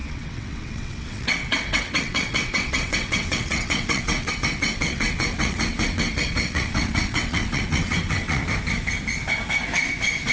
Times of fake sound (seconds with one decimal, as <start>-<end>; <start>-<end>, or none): 0.0-8.4